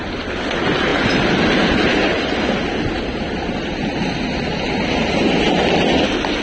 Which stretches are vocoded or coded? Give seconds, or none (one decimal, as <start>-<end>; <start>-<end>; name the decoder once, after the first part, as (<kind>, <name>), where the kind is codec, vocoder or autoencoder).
none